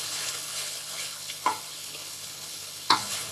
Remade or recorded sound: remade